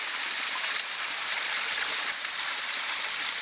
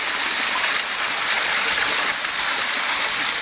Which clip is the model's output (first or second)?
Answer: first